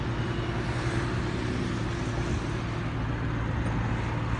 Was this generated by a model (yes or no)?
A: no